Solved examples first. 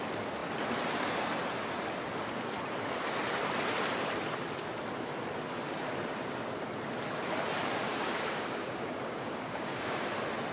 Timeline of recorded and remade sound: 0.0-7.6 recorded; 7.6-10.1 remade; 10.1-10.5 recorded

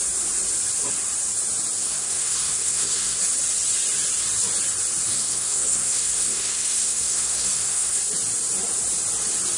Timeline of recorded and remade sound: 0.0-1.8 recorded; 1.8-3.2 remade; 3.2-5.1 recorded; 5.1-8.0 remade; 8.0-9.6 recorded

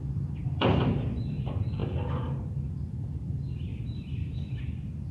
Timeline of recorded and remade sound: 0.0-3.7 remade; 3.7-4.6 recorded; 4.6-5.1 remade

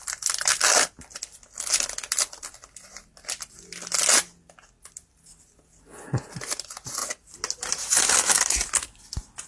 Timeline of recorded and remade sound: 0.0-9.5 recorded

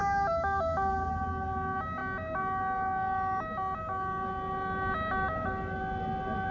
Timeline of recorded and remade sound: 0.0-6.5 recorded

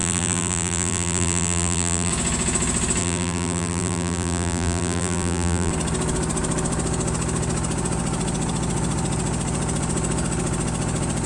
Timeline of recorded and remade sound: 0.0-2.1 remade; 2.1-3.0 recorded; 3.0-5.7 remade; 5.7-11.3 recorded

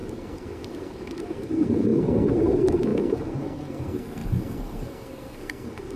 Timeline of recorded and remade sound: 0.0-6.0 remade

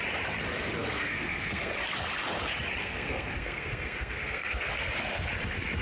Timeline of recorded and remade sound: 0.0-0.8 recorded; 0.8-1.7 remade; 1.7-2.8 recorded; 2.8-4.7 remade; 4.7-5.8 recorded